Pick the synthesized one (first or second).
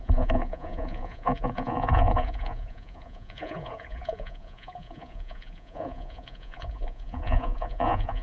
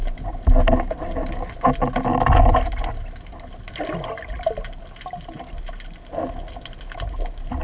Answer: first